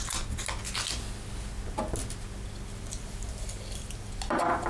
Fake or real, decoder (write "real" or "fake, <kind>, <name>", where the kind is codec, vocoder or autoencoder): real